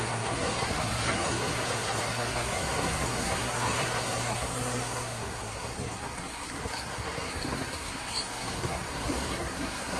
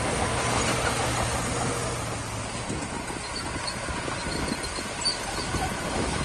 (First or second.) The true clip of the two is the second